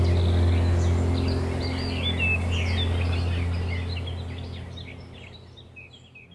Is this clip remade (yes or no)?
no